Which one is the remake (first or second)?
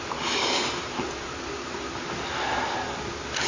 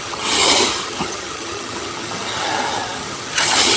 second